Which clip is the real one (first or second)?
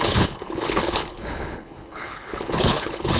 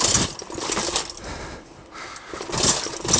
second